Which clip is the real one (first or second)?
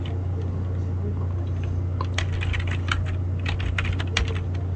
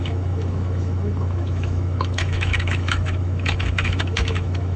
first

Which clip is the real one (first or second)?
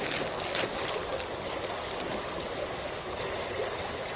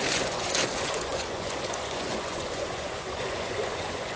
first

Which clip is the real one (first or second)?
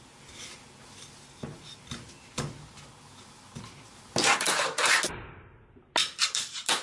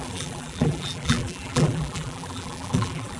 first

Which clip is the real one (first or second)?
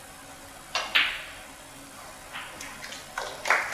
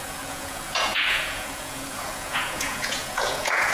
first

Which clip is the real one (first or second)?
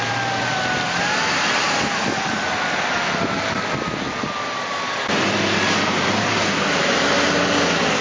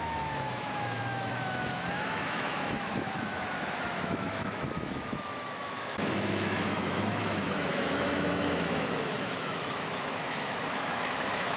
first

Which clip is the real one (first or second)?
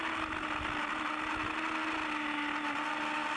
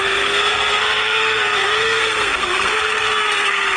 first